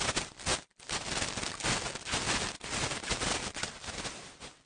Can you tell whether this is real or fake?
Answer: real